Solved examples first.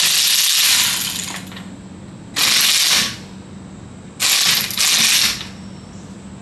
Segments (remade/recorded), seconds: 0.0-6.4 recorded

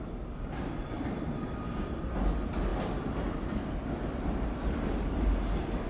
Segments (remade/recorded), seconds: 0.0-5.9 recorded

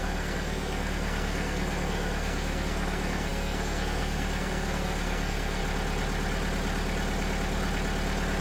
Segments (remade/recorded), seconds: 0.0-5.6 remade; 5.6-8.4 recorded

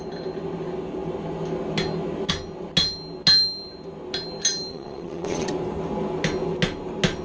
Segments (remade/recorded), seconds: 0.0-4.7 recorded; 4.7-5.5 remade; 5.5-7.2 recorded

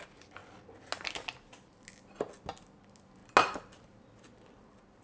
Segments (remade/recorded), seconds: 0.0-5.0 recorded

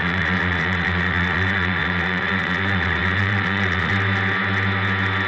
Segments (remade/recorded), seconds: 0.0-3.9 remade; 3.9-5.3 recorded